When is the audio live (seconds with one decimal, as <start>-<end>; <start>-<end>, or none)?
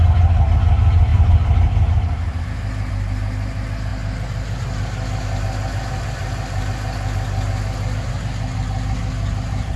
0.0-1.1; 2.9-9.8